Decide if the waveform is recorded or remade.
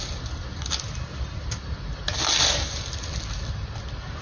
recorded